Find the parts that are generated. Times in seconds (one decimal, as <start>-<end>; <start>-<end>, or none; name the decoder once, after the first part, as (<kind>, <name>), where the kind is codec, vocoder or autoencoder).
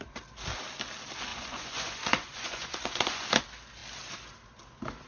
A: 1.3-3.4 (vocoder, Vocos)